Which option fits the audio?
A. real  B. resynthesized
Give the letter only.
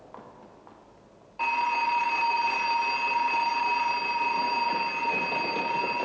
A